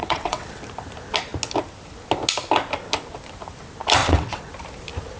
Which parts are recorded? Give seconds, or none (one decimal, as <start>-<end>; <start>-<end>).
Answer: 0.6-4.0; 4.5-5.2